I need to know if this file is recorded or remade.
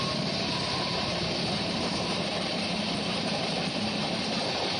remade